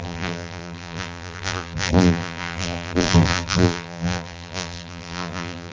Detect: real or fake fake